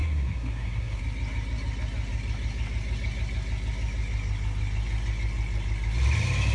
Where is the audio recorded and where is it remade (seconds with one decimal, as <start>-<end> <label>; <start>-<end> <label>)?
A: 0.0-1.0 remade; 1.0-6.5 recorded